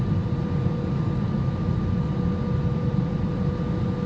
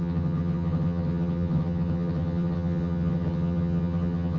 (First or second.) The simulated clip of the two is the second